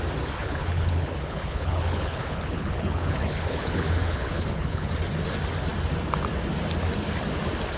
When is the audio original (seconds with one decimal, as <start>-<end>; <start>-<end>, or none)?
0.0-0.4; 4.9-7.8